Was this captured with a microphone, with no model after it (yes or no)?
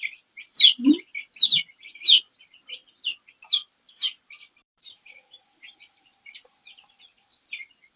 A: no